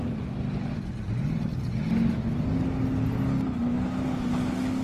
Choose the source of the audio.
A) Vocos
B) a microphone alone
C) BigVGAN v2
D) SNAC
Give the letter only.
B